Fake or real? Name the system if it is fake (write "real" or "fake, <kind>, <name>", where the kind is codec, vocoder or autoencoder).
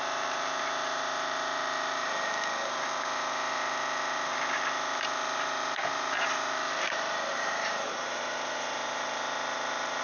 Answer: fake, vocoder, BigVGAN v2